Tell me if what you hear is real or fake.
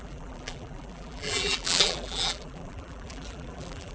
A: fake